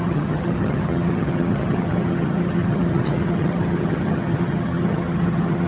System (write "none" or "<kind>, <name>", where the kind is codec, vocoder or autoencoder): vocoder, HiFi-GAN